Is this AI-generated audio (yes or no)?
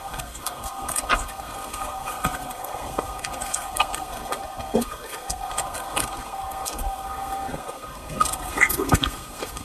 yes